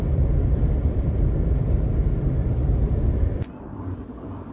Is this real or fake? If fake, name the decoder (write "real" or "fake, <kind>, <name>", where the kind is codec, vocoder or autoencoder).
fake, vocoder, BigVGAN v2